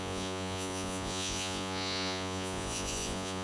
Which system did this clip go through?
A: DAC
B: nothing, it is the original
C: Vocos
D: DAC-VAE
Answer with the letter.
C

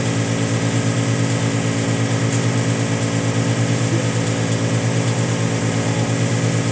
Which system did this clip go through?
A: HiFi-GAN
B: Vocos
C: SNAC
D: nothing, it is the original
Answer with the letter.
D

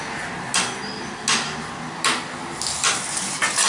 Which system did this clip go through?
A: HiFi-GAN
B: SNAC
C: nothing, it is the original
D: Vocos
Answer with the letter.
C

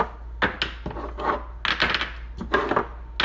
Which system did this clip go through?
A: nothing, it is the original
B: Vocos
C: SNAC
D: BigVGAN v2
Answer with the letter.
A